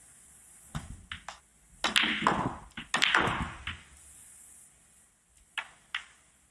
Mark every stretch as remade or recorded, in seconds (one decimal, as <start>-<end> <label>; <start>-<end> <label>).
0.0-6.5 recorded